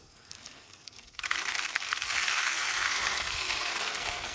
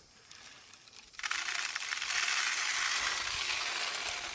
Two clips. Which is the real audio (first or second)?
second